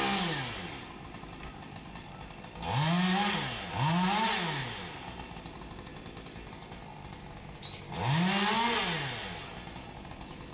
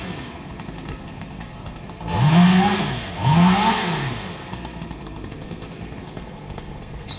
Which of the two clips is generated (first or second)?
second